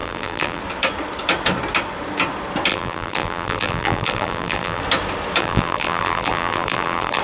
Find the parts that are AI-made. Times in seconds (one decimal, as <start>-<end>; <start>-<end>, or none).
0.0-0.6; 2.7-4.8; 5.4-7.2